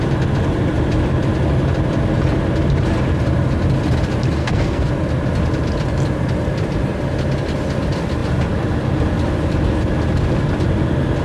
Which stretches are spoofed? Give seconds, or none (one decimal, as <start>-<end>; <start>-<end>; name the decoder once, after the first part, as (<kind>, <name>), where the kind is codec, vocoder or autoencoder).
4.4-4.9 (codec, SNAC)

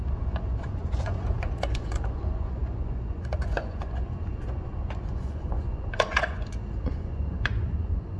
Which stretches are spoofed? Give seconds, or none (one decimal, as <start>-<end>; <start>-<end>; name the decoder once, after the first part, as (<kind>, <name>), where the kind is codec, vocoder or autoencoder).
0.0-8.2 (vocoder, Vocos)

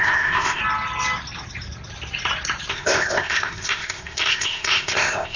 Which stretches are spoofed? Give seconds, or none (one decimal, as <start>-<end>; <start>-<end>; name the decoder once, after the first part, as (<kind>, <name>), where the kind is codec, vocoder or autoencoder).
0.0-0.6 (codec, ZipCodec); 2.7-5.4

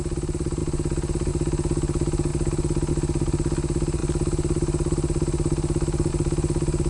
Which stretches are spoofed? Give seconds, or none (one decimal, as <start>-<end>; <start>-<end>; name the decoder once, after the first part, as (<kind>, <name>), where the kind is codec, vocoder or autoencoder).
none

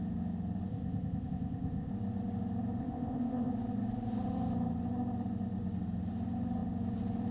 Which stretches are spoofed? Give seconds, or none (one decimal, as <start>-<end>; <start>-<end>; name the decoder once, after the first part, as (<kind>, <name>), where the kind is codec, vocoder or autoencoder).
0.7-1.9 (codec, ZipCodec); 2.8-3.5

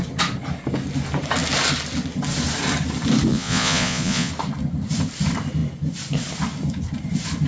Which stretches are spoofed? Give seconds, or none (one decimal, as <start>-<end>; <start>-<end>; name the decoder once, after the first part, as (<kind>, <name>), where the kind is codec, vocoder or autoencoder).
3.3-4.3 (vocoder, Vocos)